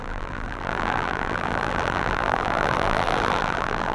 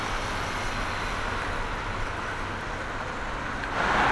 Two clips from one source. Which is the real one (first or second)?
second